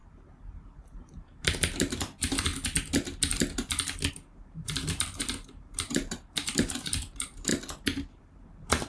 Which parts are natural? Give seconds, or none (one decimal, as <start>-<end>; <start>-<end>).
0.0-0.8; 2.5-4.1; 7.5-8.1